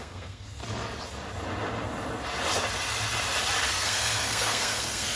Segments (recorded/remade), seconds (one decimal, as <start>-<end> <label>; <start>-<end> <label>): 0.0-0.6 remade; 0.6-3.7 recorded; 3.7-5.2 remade